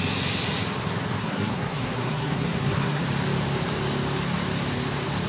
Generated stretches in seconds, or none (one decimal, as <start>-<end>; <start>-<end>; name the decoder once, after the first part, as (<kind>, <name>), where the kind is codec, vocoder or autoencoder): 1.2-3.0 (codec, SNAC)